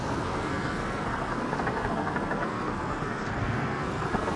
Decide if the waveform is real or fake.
fake